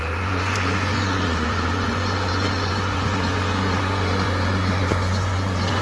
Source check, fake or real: fake